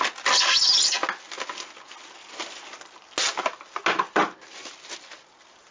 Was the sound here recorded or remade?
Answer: recorded